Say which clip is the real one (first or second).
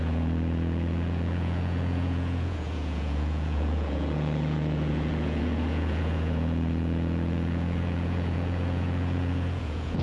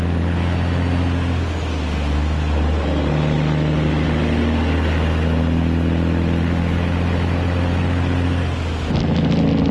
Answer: second